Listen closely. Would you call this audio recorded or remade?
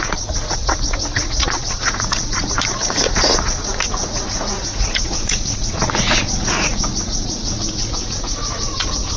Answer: remade